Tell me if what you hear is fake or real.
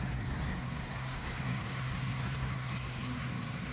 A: fake